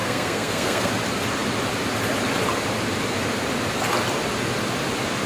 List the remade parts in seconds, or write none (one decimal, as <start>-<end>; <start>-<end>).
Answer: 0.0-0.9